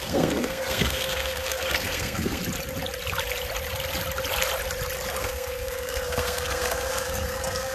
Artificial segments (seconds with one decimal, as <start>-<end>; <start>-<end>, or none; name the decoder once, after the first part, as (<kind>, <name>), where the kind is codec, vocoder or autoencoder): 0.0-2.4 (codec, SNAC); 5.2-7.7